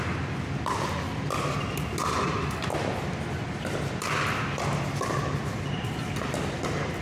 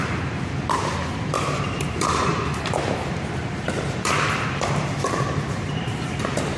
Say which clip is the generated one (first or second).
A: second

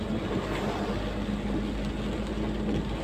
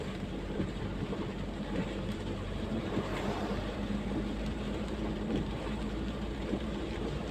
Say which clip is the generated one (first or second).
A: second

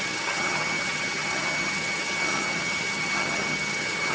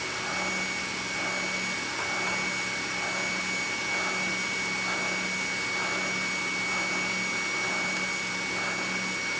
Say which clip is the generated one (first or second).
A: first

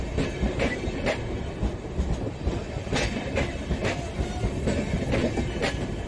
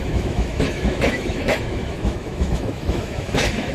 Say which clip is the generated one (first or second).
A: second